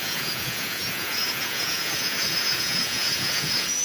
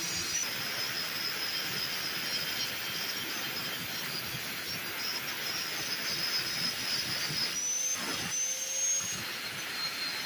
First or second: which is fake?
first